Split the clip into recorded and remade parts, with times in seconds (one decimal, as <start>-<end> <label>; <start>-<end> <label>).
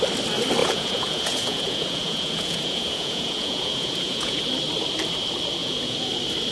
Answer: 0.0-0.6 recorded; 0.6-4.4 remade; 4.4-5.6 recorded; 5.6-6.1 remade; 6.1-6.5 recorded